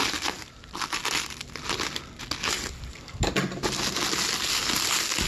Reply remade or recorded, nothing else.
recorded